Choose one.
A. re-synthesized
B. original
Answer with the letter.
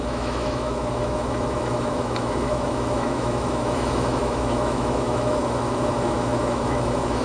A